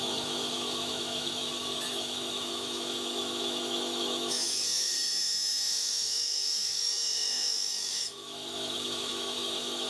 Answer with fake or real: fake